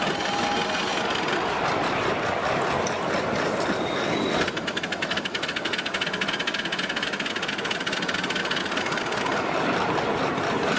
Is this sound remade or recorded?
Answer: recorded